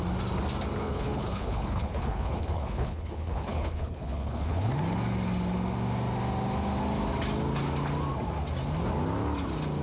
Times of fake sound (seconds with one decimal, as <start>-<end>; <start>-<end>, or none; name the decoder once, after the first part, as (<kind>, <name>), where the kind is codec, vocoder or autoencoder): 0.8-4.7 (codec, HILCodec)